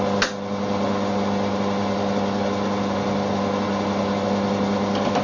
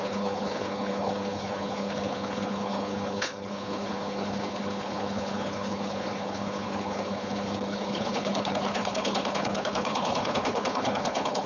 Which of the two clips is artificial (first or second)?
second